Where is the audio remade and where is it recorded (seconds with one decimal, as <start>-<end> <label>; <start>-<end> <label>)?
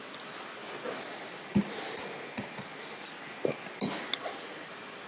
0.0-5.1 recorded